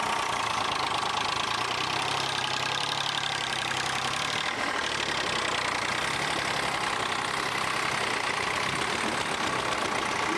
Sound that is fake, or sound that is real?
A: real